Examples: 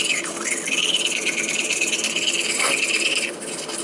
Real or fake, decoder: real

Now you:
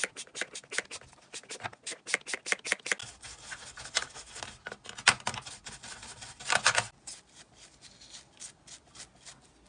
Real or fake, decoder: real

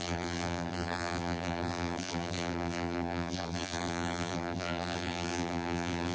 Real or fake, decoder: fake, vocoder, BigVGAN v2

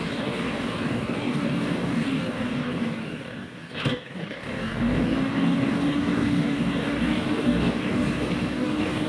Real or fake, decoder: fake, codec, DAC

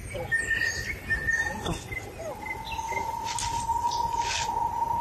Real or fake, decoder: real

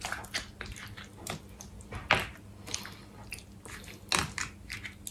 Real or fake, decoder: real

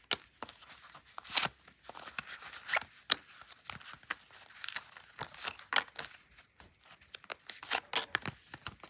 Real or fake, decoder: real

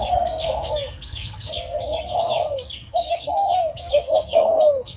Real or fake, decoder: fake, codec, SNAC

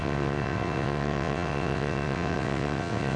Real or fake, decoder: fake, vocoder, WaveNeXt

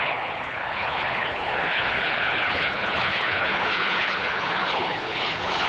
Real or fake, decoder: fake, codec, HILCodec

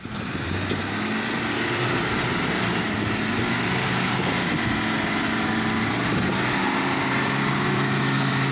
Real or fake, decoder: real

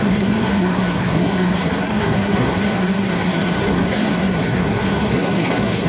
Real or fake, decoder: fake, codec, SNAC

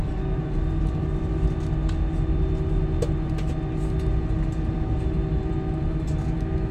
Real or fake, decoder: real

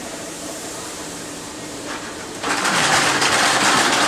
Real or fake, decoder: fake, vocoder, BigVGAN v2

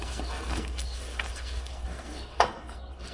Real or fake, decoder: fake, codec, SNAC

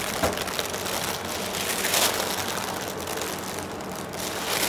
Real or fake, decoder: real